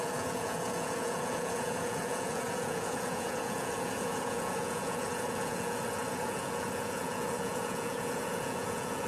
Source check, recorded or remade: remade